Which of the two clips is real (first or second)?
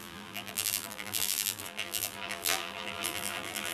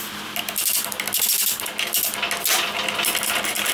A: second